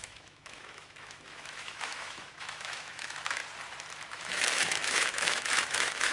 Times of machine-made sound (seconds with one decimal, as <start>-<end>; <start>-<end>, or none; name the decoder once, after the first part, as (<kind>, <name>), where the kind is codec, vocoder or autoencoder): 0.0-3.4 (autoencoder, DAC-VAE); 4.1-6.1